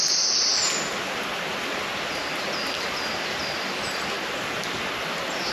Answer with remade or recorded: recorded